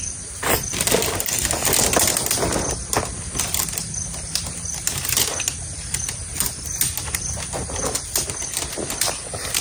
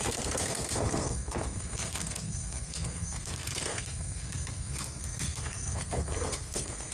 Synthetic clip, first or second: second